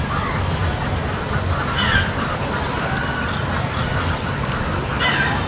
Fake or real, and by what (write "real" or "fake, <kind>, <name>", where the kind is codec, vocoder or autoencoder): real